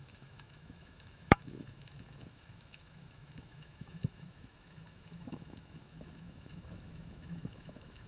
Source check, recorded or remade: remade